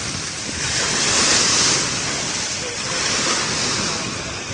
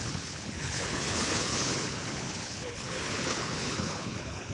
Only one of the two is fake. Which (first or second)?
second